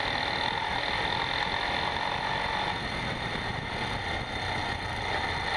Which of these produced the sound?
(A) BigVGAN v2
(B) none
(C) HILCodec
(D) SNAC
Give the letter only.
B